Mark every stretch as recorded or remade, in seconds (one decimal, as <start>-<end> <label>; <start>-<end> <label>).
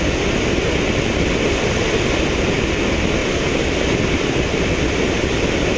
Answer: 0.0-3.2 recorded; 3.2-4.7 remade; 4.7-5.8 recorded